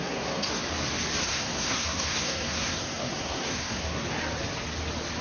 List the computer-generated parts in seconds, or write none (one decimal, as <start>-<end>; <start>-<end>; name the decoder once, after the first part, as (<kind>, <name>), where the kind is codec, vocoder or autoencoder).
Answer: 0.0-0.6 (codec, SNAC); 1.2-4.0